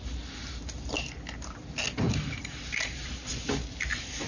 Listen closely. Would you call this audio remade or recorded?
recorded